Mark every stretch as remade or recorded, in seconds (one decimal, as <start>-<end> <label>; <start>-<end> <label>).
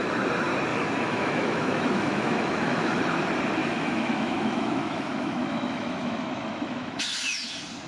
0.0-0.7 recorded; 0.7-3.0 remade; 3.0-3.6 recorded; 3.6-7.0 remade; 7.0-7.9 recorded